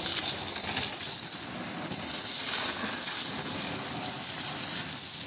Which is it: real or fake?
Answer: real